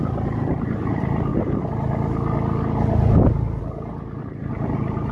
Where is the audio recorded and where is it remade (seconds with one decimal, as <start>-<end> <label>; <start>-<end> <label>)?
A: 0.0-1.3 remade; 1.3-3.6 recorded; 3.6-5.1 remade